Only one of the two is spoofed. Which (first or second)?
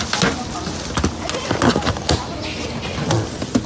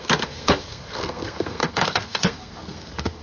second